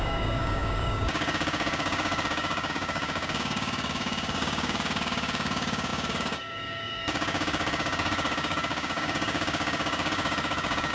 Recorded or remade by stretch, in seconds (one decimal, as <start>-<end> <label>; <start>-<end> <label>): 0.0-10.9 remade